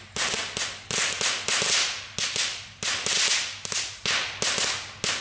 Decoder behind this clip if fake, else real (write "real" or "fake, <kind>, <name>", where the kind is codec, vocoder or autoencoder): real